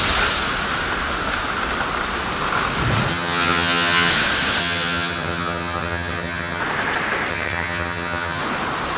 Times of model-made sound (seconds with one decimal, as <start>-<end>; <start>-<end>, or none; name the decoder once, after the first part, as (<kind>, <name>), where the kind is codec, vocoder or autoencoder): 3.1-4.1 (vocoder, HiFi-GAN); 4.6-6.6; 7.3-8.4